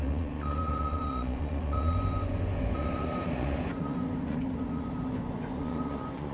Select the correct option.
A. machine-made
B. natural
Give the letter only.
A